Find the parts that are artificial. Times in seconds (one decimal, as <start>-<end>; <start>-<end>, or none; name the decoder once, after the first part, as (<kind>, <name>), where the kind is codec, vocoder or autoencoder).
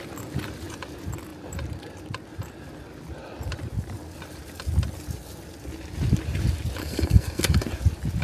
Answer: 6.8-7.7 (codec, SNAC)